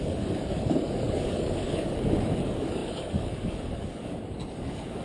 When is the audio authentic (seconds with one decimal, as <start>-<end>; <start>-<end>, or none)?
none